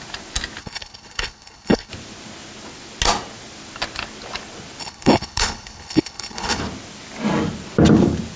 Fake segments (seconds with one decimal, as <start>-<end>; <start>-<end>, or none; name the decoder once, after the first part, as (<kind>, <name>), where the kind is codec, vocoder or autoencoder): 0.6-1.9 (codec, HILCodec); 4.8-6.6